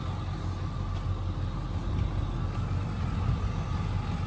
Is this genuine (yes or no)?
yes